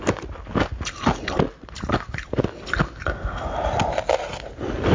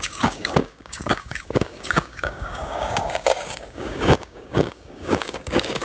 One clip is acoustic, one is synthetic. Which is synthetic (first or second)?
second